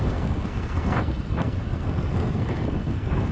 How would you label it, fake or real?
fake